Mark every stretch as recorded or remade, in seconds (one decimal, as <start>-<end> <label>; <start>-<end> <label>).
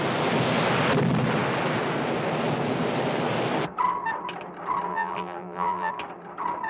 0.0-4.9 recorded; 4.9-5.9 remade; 5.9-6.7 recorded